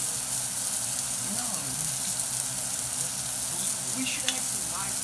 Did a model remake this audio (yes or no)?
no